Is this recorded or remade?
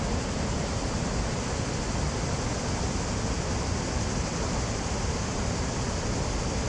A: recorded